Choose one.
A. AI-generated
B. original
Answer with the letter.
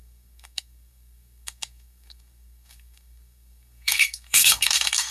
A